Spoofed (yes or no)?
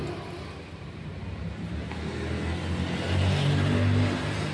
no